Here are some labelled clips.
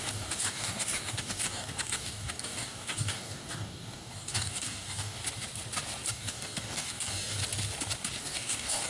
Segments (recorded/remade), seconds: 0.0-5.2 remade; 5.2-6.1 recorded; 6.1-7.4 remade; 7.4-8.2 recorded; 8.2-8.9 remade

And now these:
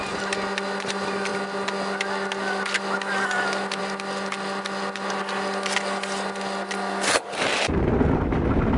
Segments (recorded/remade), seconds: 0.0-8.8 recorded

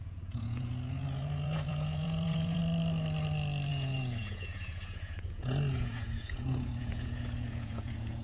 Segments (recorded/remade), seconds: 0.0-2.6 remade; 2.6-3.7 recorded; 3.7-8.2 remade

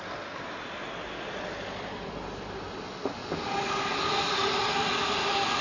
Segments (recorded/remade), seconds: 0.0-5.6 recorded

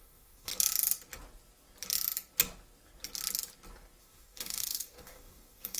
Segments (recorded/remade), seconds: 0.0-0.5 remade; 0.5-4.0 recorded; 4.0-5.8 remade